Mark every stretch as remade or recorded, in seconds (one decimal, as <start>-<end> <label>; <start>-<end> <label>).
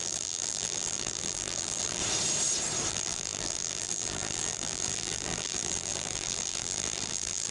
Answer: 0.0-2.0 remade; 2.0-2.9 recorded; 2.9-7.5 remade